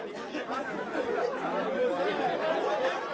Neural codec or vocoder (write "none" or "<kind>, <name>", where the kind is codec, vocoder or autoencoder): none